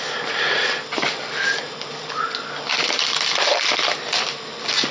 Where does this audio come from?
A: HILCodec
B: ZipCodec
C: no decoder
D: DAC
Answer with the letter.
C